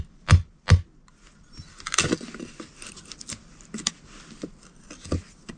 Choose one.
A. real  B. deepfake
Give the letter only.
A